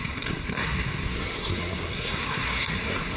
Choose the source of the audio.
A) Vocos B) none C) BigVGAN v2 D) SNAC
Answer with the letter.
D